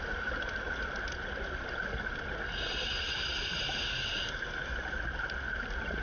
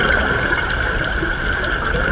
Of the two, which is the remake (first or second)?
second